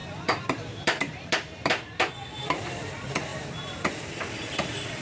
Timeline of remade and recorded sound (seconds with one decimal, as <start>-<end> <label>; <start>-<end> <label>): 0.0-3.3 remade; 3.3-3.9 recorded; 3.9-5.0 remade